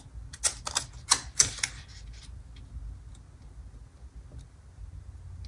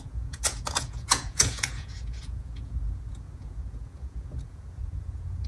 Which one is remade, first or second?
second